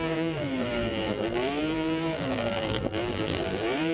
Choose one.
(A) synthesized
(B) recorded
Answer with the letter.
A